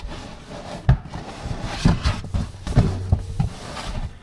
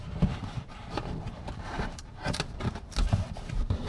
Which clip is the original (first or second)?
first